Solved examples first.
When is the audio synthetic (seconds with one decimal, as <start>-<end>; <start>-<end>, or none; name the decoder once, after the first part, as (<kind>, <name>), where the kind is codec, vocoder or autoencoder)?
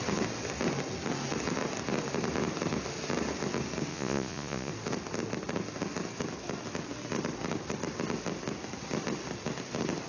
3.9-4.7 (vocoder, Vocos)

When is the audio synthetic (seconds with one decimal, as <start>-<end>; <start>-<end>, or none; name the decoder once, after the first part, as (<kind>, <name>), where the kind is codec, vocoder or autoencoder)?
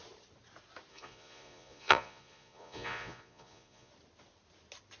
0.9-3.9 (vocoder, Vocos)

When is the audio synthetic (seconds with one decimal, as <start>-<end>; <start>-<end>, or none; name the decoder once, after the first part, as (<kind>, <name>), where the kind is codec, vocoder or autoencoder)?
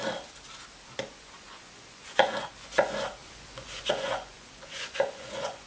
1.1-5.7 (vocoder, Vocos)